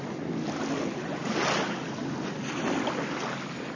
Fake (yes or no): no